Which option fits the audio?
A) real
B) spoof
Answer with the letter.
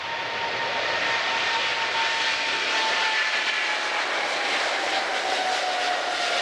A